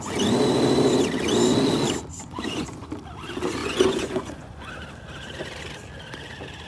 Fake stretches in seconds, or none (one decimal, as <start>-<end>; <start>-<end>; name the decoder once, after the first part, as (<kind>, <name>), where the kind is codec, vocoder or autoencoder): 2.1-2.9 (vocoder, Vocos); 3.6-4.7